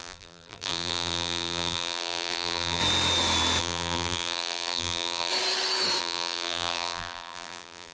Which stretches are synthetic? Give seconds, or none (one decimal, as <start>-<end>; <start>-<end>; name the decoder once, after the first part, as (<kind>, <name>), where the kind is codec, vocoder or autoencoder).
0.0-2.8 (vocoder, BigVGAN v2); 3.6-5.3; 6.0-7.9